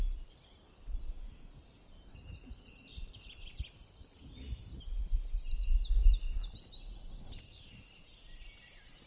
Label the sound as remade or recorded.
recorded